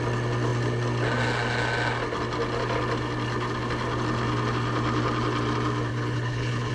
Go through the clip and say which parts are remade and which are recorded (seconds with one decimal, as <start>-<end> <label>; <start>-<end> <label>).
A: 0.0-5.9 recorded; 5.9-6.7 remade